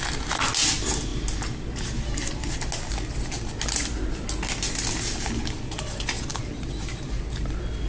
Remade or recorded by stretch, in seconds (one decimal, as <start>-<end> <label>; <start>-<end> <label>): 0.0-7.9 recorded